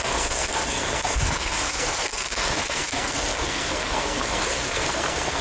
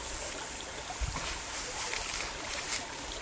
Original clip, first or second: second